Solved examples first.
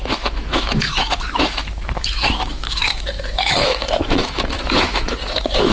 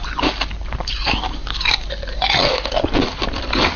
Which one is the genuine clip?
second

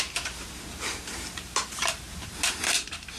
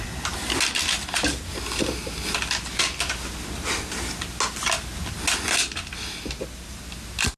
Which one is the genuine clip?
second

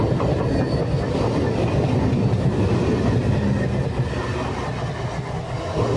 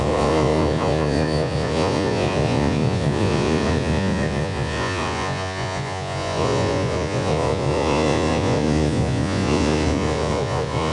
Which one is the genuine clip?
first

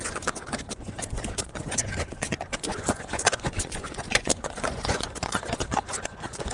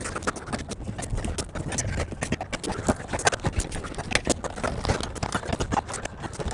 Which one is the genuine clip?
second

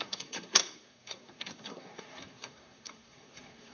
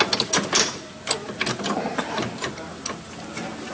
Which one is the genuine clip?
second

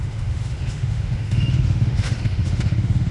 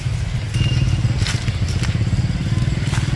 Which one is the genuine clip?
second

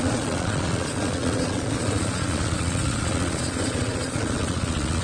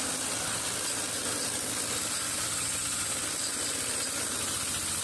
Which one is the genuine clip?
second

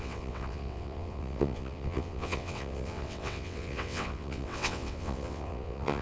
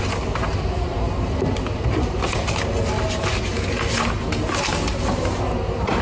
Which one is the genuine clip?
second